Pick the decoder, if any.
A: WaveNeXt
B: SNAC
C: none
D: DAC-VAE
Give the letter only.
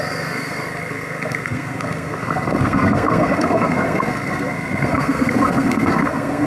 B